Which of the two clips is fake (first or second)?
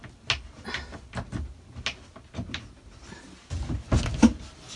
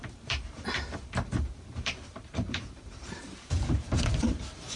second